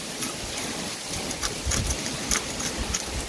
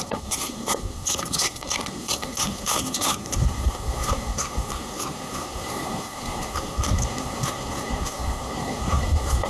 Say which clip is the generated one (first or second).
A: second